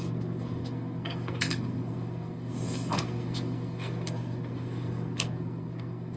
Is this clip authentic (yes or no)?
no